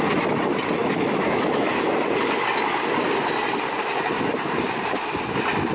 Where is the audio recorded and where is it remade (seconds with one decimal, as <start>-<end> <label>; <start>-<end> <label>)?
0.0-0.8 recorded; 0.8-1.7 remade; 1.7-5.7 recorded